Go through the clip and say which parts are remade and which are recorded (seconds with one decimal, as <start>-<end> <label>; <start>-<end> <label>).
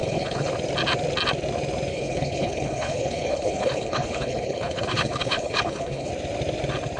0.0-0.5 remade; 0.5-1.9 recorded; 1.9-6.1 remade; 6.1-7.0 recorded